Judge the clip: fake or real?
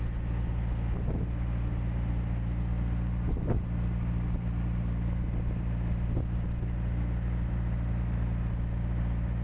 real